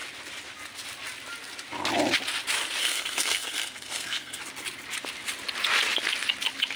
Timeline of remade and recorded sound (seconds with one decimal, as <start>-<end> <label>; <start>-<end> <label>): 0.0-2.8 recorded; 2.8-4.4 remade; 4.4-6.8 recorded